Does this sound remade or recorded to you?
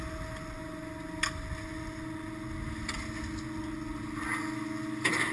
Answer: recorded